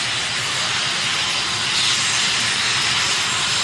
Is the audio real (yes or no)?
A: yes